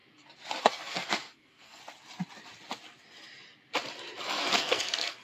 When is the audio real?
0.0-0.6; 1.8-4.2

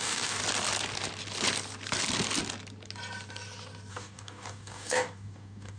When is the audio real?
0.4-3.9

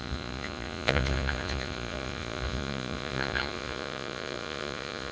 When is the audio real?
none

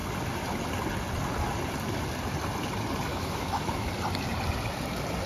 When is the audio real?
0.0-3.1; 3.9-5.3

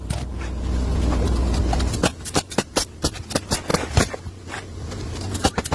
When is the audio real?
0.0-2.1; 2.9-3.7; 4.5-5.7

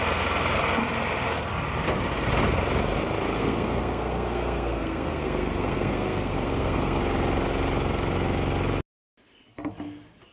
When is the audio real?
0.0-3.3; 7.0-10.3

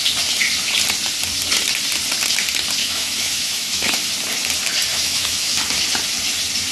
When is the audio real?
0.0-2.8; 4.1-4.9; 5.5-6.7